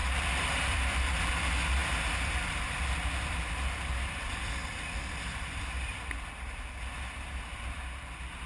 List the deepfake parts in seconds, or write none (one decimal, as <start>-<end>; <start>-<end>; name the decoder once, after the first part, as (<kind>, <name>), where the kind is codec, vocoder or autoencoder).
0.0-1.3 (vocoder, BigVGAN v2)